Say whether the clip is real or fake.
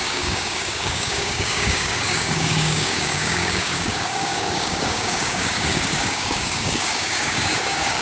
fake